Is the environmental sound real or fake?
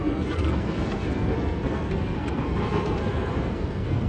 fake